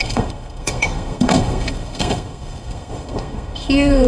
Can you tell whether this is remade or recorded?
remade